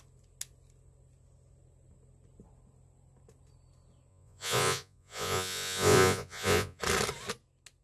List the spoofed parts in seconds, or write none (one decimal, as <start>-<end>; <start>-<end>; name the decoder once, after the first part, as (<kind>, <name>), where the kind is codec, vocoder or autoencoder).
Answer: 4.1-6.8 (vocoder, Vocos)